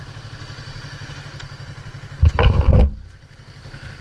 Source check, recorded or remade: recorded